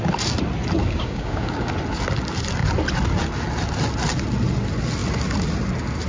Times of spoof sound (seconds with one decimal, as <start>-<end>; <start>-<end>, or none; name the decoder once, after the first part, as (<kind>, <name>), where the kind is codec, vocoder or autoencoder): 0.8-1.7 (codec, DAC)